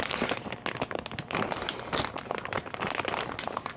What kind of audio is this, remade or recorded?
recorded